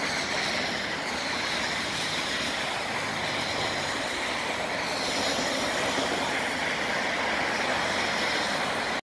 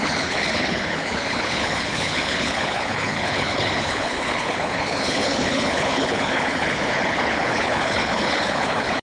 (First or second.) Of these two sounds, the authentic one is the first